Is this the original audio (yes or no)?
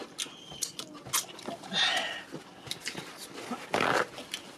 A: yes